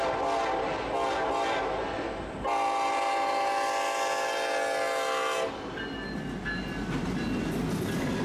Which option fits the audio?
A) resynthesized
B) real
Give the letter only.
B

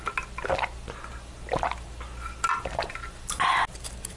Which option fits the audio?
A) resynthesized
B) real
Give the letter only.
B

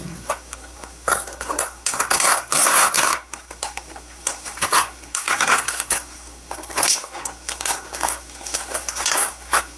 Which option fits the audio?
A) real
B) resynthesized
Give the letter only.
B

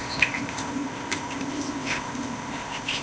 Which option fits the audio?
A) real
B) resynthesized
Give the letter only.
B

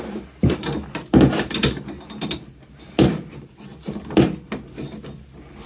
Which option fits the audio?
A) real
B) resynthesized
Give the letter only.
A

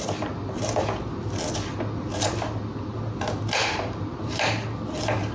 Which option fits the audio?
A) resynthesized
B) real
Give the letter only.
B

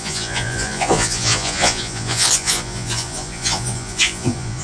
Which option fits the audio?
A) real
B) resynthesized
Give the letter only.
B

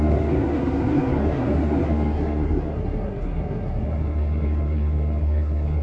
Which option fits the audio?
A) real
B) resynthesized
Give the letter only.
B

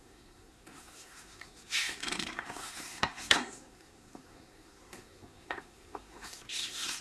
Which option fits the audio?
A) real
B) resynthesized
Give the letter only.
B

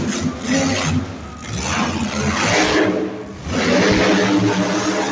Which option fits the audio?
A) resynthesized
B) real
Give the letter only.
B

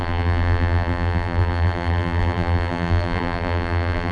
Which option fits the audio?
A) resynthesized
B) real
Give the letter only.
A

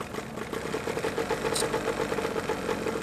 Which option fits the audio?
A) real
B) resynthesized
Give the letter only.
A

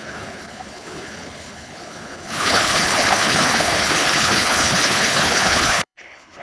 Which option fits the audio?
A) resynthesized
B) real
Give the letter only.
A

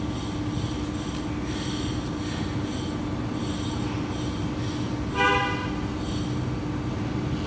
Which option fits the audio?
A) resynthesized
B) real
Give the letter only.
B